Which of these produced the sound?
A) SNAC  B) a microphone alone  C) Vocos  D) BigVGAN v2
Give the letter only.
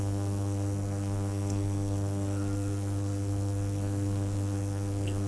A